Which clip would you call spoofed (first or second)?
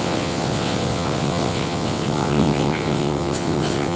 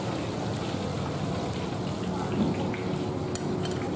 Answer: first